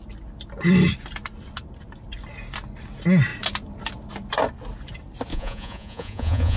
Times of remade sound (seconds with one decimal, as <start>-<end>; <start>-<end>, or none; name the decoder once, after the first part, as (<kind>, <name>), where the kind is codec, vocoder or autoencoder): 5.3-6.6 (vocoder, Vocos)